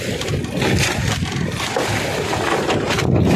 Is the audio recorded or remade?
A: recorded